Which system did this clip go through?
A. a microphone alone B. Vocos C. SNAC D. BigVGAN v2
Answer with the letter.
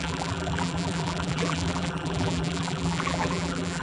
D